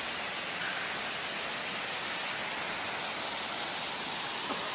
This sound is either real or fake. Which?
real